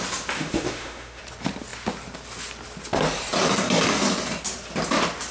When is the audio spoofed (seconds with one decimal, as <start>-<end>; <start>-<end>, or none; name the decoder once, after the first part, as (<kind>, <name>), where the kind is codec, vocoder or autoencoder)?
0.4-1.2 (autoencoder, DAC-VAE)